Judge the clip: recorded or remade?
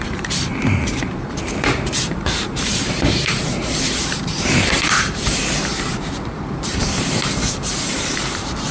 remade